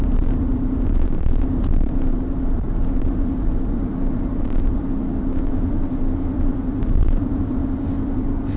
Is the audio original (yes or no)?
no